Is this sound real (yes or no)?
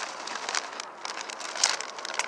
yes